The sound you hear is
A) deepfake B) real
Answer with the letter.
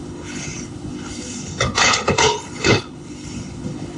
A